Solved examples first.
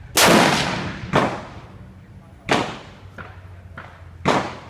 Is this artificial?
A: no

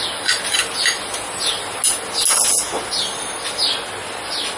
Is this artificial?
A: no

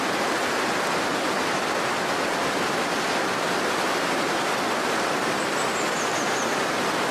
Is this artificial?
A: no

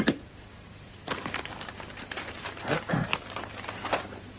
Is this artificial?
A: yes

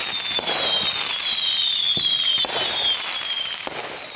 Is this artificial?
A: no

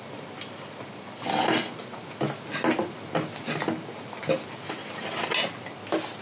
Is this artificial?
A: no